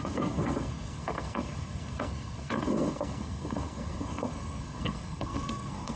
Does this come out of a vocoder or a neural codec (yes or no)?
yes